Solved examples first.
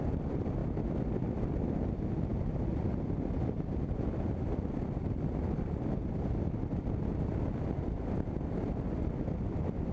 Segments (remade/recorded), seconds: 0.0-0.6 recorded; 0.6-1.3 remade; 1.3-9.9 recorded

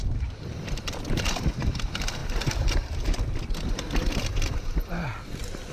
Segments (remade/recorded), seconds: 0.0-2.2 recorded; 2.2-3.4 remade; 3.4-5.7 recorded